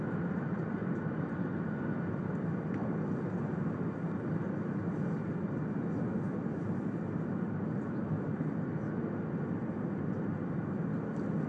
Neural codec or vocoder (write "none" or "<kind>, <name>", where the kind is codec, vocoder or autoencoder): none